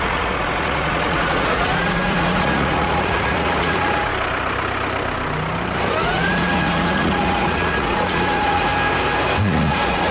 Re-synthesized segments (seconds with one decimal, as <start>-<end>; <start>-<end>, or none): 0.0-4.1; 6.0-8.7; 9.4-10.1